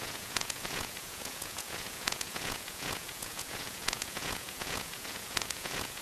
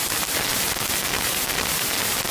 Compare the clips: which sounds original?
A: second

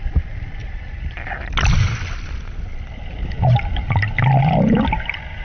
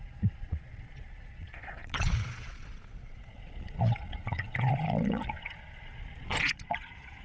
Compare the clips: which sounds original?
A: first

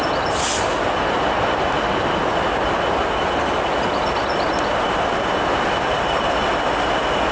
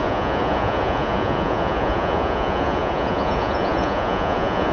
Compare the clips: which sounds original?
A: first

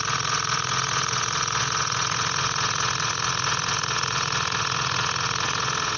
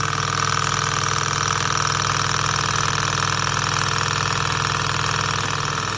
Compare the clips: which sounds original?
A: second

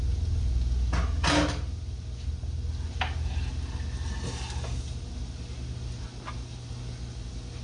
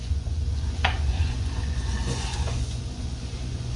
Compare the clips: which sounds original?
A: first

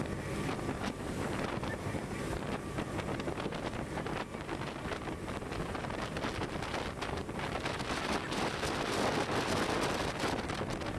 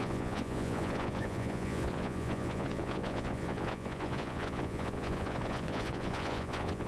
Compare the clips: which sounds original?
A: first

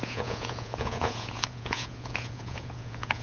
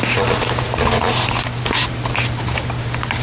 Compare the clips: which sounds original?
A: second